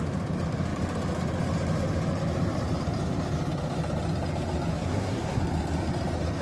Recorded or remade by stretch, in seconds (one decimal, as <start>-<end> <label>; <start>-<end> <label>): 0.0-4.7 recorded; 4.7-5.4 remade; 5.4-6.4 recorded